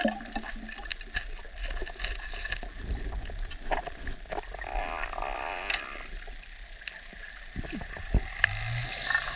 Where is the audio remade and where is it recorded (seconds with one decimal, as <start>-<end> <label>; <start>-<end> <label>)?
0.0-9.4 recorded

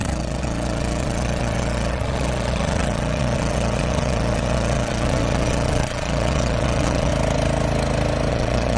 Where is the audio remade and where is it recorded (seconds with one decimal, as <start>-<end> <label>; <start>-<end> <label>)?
0.0-7.1 remade; 7.1-8.3 recorded; 8.3-8.8 remade